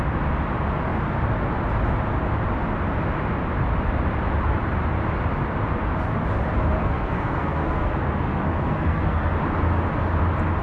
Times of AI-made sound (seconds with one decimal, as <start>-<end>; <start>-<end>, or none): 6.8-9.3